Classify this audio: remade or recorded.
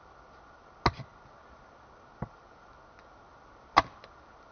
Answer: recorded